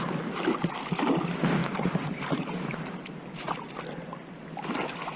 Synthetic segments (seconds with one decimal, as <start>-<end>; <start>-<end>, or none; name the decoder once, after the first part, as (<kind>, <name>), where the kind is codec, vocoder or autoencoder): 1.6-3.0 (vocoder, BigVGAN v2)